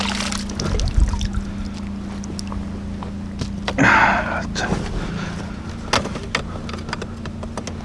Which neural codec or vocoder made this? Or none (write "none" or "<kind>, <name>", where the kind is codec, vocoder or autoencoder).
none